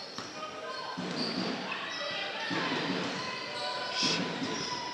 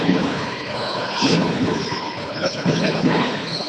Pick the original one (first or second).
first